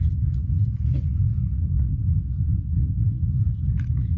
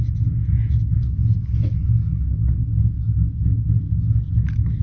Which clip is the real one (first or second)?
second